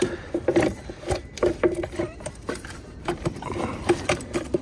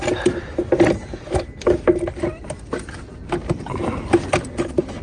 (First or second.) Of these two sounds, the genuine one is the second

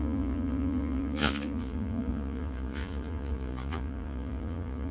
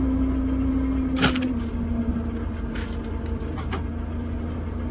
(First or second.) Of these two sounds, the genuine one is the second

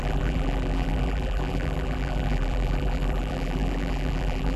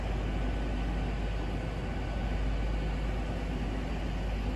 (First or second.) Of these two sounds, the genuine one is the second